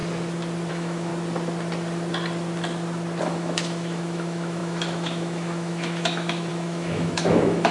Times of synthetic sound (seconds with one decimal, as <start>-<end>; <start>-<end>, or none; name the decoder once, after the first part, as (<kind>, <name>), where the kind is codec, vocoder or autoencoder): 0.7-1.1 (autoencoder, DAC-VAE); 3.2-7.7